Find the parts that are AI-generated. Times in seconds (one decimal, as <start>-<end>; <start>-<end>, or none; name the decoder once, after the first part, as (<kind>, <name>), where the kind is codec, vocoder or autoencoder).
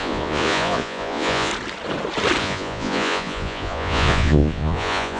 0.0-1.5 (vocoder, Vocos); 2.4-5.2